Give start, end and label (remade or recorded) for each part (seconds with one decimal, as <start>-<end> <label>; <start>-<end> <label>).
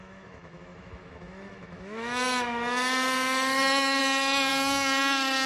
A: 0.0-5.5 remade